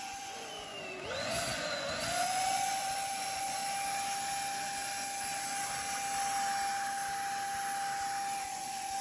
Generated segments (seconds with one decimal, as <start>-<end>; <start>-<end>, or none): 0.0-3.6; 8.4-9.0